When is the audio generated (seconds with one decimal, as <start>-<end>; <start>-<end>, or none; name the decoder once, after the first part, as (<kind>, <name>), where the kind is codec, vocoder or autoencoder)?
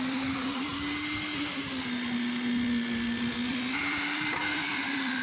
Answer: 0.0-0.7 (vocoder, BigVGAN v2); 3.5-5.2